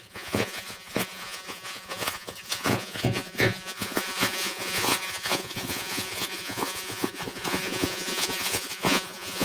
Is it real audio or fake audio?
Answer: fake